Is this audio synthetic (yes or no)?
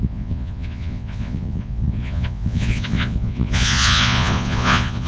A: yes